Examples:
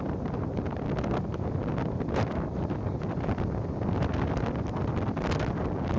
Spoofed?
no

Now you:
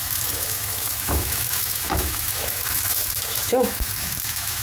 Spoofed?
yes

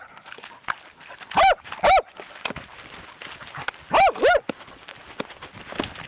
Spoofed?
no